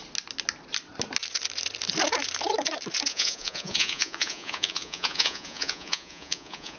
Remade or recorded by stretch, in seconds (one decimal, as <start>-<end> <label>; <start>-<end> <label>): 0.0-3.1 recorded; 3.1-6.8 remade